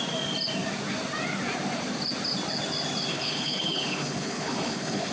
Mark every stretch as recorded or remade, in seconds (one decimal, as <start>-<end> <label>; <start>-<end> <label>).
0.0-3.1 recorded; 3.1-5.1 remade